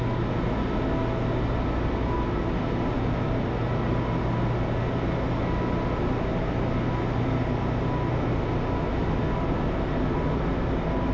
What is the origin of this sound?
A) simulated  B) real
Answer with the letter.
B